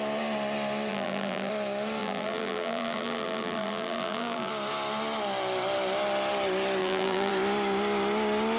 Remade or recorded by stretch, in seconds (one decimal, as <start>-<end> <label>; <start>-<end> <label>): 0.0-0.9 recorded; 0.9-1.5 remade; 1.5-2.0 recorded; 2.0-4.5 remade; 4.5-6.8 recorded; 6.8-7.3 remade; 7.3-8.6 recorded